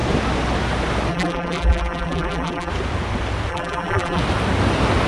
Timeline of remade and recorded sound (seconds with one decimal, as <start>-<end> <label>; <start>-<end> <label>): 0.0-1.1 recorded; 1.1-2.7 remade; 2.7-3.5 recorded; 3.5-4.2 remade; 4.2-5.1 recorded